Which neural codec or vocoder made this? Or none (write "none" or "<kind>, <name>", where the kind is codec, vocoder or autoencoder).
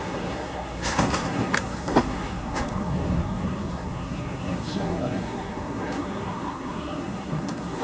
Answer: codec, SNAC